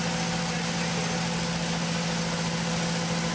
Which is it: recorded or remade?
recorded